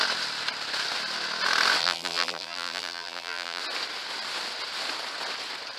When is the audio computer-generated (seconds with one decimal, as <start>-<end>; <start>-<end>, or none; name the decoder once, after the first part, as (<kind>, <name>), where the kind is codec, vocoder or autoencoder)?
1.8-3.6 (vocoder, BigVGAN v2)